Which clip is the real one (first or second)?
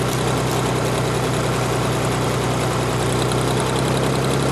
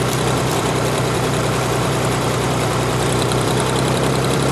first